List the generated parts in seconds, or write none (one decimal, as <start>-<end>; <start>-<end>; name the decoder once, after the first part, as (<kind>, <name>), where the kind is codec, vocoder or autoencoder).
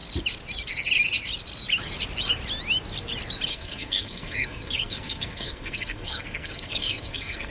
3.5-7.5 (codec, SNAC)